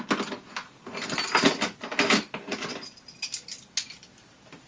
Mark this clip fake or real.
real